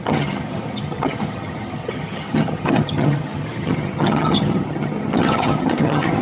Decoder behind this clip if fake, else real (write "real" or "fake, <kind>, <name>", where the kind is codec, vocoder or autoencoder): fake, vocoder, HiFi-GAN